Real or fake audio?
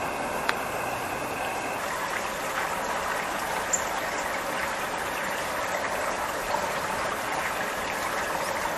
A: real